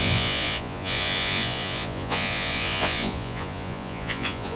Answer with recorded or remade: remade